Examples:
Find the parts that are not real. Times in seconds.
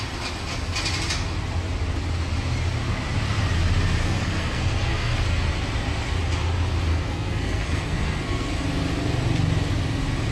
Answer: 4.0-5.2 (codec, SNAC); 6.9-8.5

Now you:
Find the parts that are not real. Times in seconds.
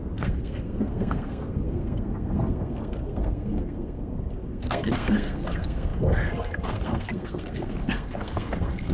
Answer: 0.0-8.9 (codec, SNAC)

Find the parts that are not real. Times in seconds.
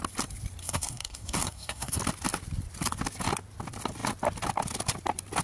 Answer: 0.6-2.0 (codec, SNAC)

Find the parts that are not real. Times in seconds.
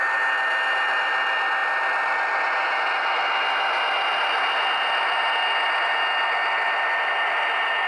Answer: none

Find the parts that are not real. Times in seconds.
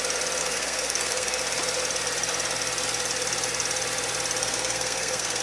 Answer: 0.4-1.4 (codec, SNAC); 4.4-5.4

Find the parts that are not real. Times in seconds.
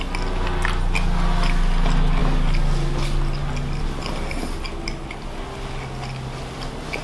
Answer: none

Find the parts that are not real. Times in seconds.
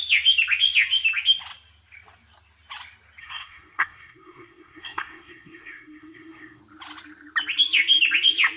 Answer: 3.2-6.6 (codec, SNAC)